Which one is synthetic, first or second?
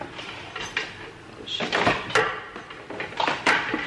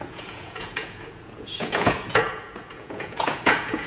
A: second